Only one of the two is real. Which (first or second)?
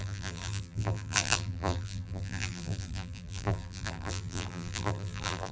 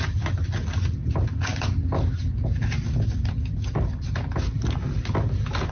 second